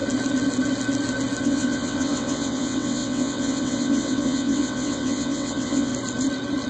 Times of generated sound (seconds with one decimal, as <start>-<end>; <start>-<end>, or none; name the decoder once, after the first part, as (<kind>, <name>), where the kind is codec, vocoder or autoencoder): 1.4-5.9 (vocoder, WaveNeXt)